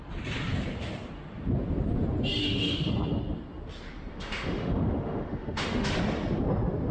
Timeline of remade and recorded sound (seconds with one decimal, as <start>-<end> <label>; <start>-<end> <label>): 0.0-2.4 recorded; 2.4-2.9 remade; 2.9-4.1 recorded; 4.1-5.9 remade; 5.9-6.9 recorded